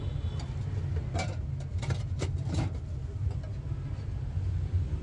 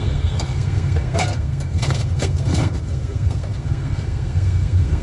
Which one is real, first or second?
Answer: first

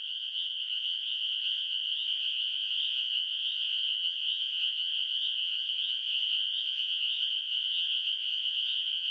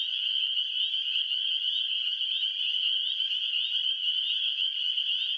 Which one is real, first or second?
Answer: second